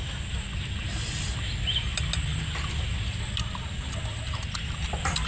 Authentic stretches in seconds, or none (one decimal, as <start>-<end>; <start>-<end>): 0.0-5.3